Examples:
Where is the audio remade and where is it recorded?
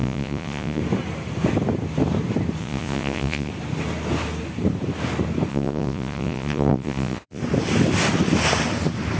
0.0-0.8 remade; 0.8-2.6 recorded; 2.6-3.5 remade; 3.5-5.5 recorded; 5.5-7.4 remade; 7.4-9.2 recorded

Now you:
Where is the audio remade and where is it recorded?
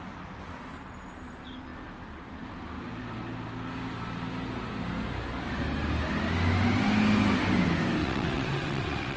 0.0-8.0 recorded; 8.0-9.2 remade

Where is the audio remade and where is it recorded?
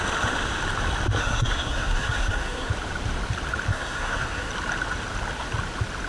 0.0-1.2 recorded; 1.2-2.7 remade; 2.7-3.7 recorded; 3.7-4.5 remade; 4.5-6.1 recorded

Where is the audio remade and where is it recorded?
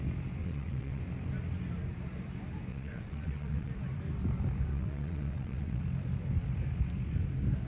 0.0-0.4 recorded; 0.4-1.0 remade; 1.0-2.7 recorded; 2.7-3.7 remade; 3.7-4.7 recorded; 4.7-5.8 remade; 5.8-7.7 recorded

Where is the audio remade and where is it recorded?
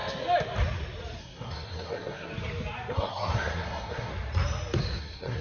0.0-1.2 recorded; 1.2-2.3 remade; 2.3-2.9 recorded; 2.9-4.1 remade; 4.1-5.0 recorded; 5.0-5.4 remade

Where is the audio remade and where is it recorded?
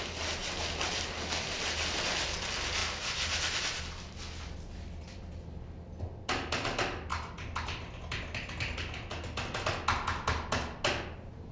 0.0-11.5 recorded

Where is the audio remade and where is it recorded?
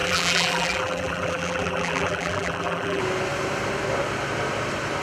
0.0-3.0 remade; 3.0-5.0 recorded